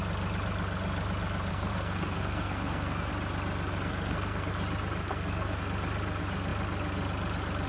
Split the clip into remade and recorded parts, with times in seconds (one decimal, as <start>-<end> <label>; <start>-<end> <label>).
0.0-1.5 recorded; 1.5-3.1 remade; 3.1-3.7 recorded; 3.7-4.5 remade; 4.5-5.0 recorded; 5.0-5.6 remade; 5.6-7.7 recorded